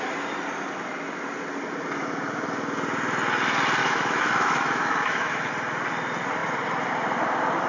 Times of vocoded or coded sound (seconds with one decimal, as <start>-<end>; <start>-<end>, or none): 3.8-5.5